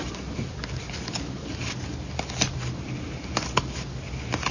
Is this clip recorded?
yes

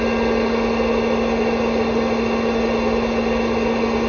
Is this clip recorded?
yes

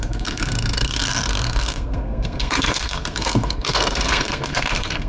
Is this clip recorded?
no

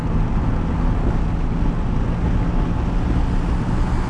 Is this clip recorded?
yes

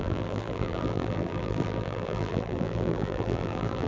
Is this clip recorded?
no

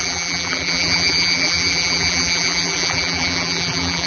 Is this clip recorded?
no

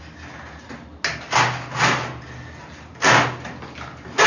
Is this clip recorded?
yes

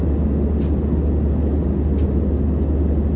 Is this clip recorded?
yes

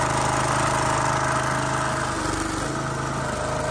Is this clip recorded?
yes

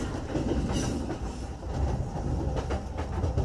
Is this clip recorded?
yes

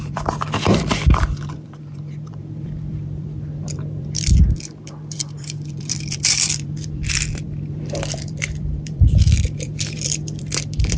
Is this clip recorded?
no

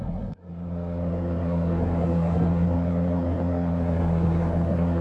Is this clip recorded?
no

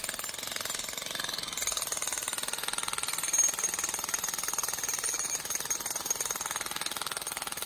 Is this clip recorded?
yes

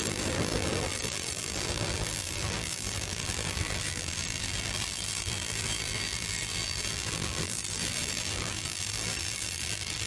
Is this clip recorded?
no